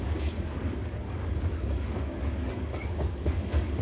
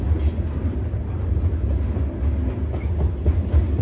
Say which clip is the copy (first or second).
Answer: first